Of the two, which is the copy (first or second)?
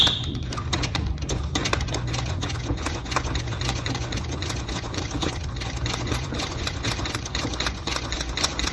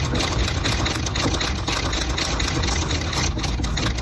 first